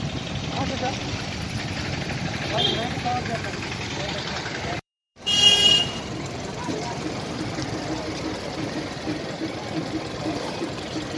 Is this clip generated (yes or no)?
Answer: yes